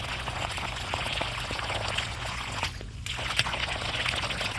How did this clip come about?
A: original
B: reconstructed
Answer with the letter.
B